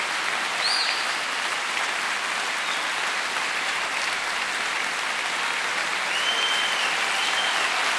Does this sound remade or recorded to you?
recorded